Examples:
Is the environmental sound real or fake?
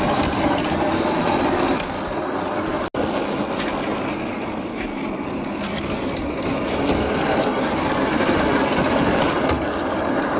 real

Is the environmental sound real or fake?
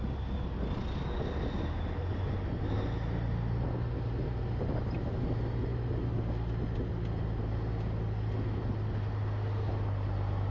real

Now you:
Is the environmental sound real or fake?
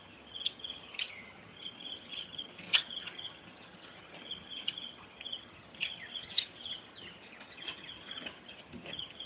fake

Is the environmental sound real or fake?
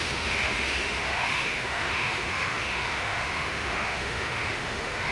fake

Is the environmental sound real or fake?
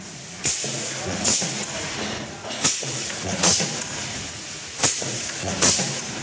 fake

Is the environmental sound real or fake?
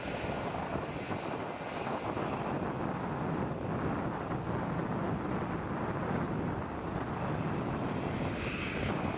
real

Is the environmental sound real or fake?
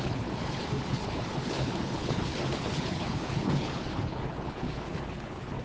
fake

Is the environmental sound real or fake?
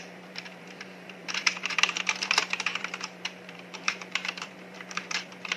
fake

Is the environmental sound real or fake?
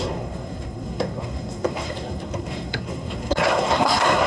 fake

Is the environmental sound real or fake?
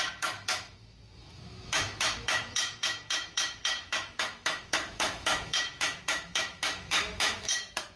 fake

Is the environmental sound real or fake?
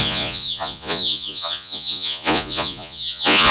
fake